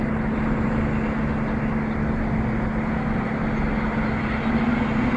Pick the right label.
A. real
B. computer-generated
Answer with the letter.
A